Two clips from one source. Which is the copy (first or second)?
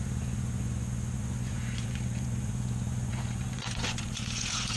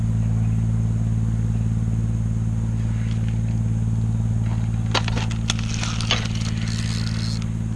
first